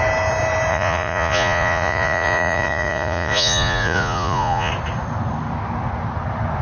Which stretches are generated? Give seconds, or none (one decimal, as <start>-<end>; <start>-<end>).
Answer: 0.7-4.7